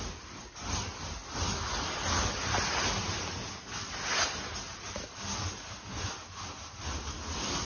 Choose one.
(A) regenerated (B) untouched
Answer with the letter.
B